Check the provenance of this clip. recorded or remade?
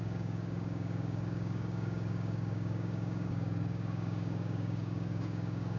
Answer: remade